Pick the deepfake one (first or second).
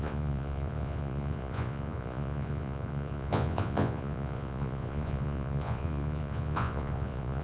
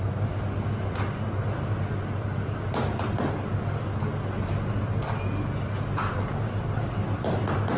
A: first